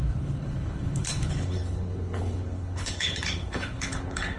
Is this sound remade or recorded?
remade